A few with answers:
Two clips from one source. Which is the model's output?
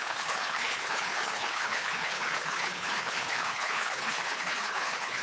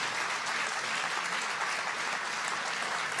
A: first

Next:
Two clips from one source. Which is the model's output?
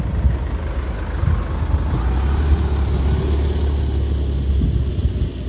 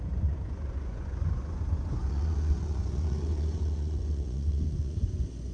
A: second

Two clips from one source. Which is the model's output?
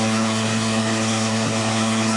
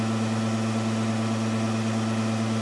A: first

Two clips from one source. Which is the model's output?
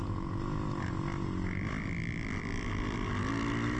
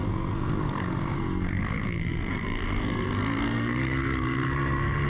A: second